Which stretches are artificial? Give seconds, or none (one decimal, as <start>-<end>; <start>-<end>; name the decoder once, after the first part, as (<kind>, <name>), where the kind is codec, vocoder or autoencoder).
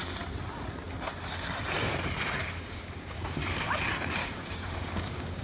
2.4-3.8 (codec, DAC); 4.2-5.4